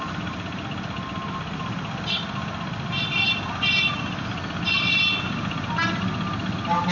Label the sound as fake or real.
real